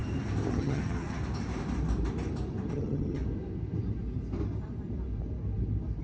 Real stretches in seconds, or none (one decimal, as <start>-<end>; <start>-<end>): 0.0-0.5; 1.2-2.7; 3.2-6.0